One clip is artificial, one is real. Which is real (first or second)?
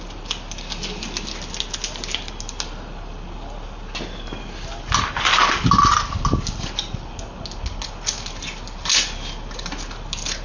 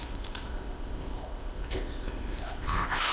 first